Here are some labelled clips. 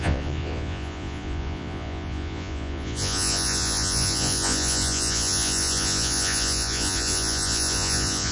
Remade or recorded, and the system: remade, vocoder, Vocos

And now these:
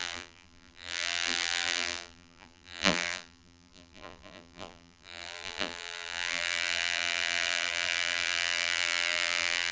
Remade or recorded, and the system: remade, vocoder, BigVGAN v2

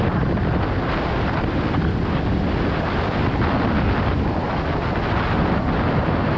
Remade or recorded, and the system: recorded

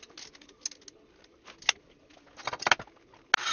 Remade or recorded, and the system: recorded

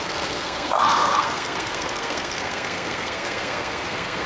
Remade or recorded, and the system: remade, codec, SNAC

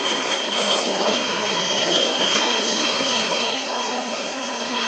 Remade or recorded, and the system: remade, codec, SNAC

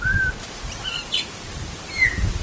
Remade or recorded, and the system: recorded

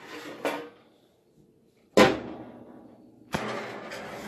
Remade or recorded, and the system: recorded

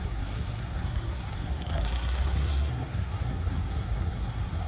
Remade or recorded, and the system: remade, codec, SNAC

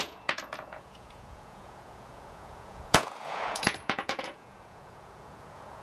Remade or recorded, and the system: remade, vocoder, Vocos